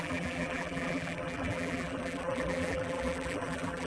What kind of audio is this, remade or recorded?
remade